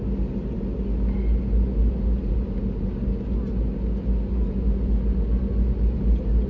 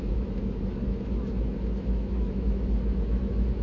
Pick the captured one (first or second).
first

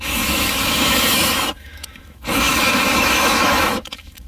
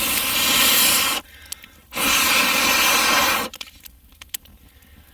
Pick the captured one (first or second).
second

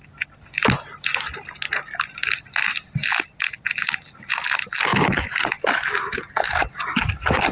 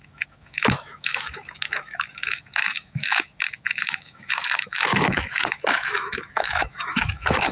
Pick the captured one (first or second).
first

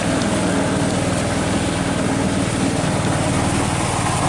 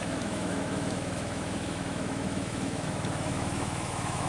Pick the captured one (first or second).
first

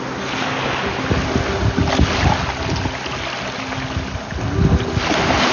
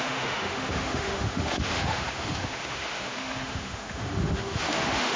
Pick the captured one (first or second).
first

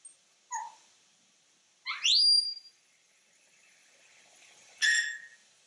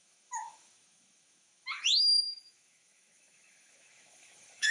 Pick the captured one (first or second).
first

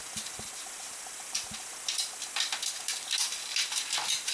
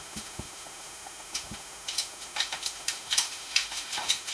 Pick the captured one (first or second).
first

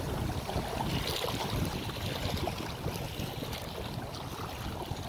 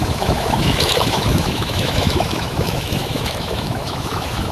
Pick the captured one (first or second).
first